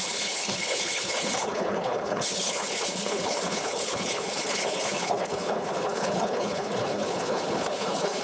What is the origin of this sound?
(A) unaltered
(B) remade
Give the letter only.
B